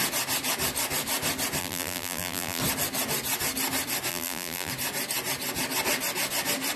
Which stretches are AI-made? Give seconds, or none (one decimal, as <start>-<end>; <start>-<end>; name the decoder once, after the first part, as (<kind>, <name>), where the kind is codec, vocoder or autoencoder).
1.6-2.6 (vocoder, BigVGAN v2); 4.1-4.7